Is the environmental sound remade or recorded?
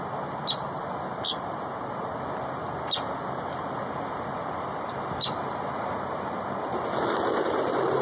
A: recorded